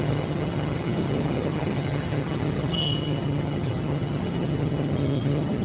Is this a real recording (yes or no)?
no